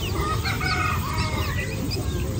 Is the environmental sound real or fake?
real